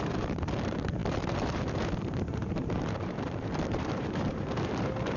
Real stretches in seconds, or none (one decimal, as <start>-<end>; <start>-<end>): none